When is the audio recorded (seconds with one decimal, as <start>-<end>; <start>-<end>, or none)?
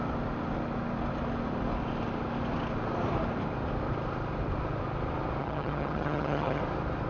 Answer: 0.0-5.4; 6.6-7.1